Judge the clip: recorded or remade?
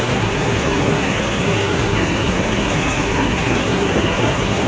remade